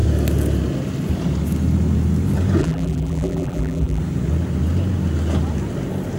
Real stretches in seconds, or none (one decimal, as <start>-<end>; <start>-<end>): 0.0-2.6; 4.0-6.2